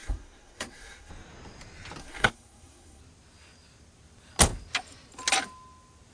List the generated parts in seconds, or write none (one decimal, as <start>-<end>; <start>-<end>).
0.0-1.1; 2.0-3.0

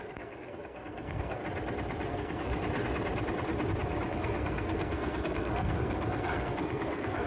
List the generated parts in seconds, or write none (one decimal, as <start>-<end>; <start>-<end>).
0.0-1.4; 2.1-2.5; 4.1-7.3